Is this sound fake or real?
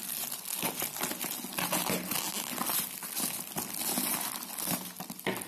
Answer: real